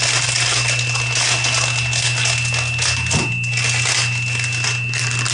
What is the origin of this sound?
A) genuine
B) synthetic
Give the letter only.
A